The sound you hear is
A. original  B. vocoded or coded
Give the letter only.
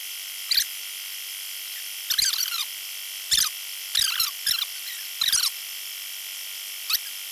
A